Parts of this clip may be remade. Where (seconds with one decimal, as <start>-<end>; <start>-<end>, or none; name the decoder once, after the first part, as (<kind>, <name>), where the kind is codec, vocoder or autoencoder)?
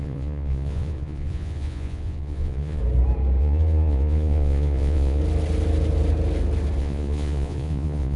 0.0-2.8 (vocoder, Vocos); 3.4-5.2; 6.8-8.2